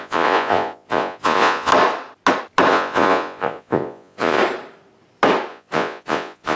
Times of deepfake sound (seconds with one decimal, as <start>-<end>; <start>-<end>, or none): 0.0-1.7; 2.7-4.4; 5.5-6.6